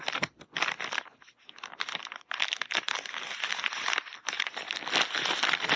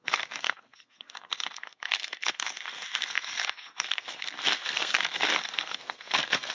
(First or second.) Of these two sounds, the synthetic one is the second